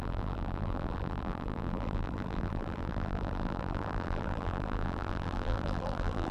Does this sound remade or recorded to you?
remade